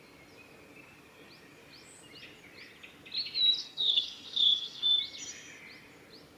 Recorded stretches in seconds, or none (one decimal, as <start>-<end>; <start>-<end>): 0.0-3.6; 5.0-6.4